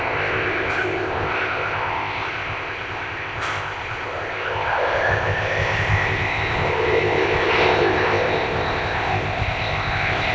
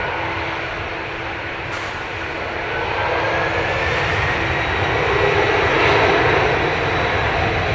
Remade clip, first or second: first